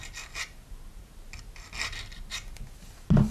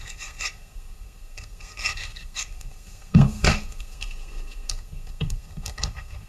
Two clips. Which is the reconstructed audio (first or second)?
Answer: second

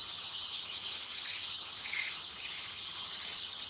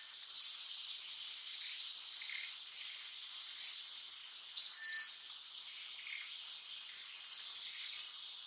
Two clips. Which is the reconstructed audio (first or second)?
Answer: first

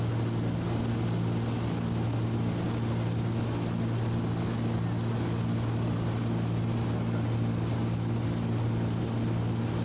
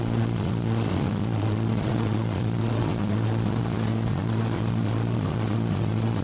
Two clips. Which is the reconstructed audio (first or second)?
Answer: second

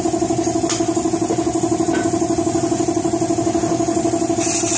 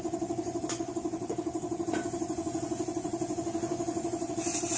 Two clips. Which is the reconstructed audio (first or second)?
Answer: second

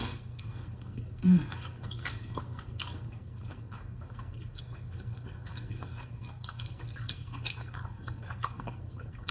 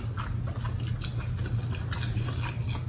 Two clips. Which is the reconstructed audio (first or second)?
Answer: first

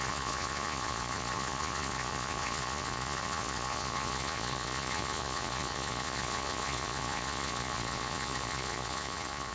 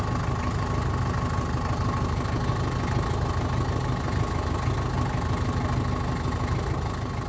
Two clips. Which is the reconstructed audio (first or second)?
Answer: first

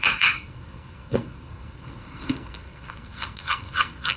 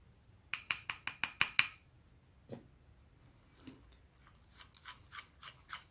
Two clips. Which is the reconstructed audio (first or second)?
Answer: first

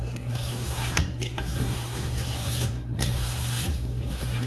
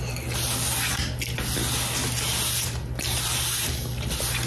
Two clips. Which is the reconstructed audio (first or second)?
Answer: first